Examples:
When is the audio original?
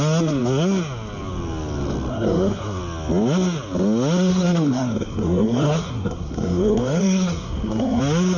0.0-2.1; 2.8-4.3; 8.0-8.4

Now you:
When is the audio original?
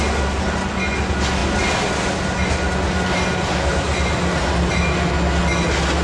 0.0-6.0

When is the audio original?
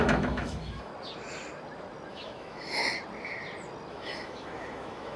0.9-2.1; 2.8-3.9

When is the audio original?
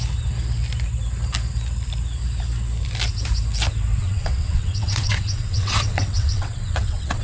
0.0-4.0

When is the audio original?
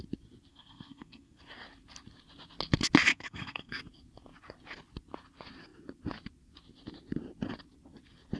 0.0-0.5; 1.4-3.1; 3.8-8.4